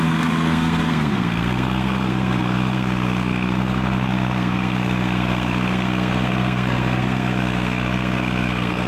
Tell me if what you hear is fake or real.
fake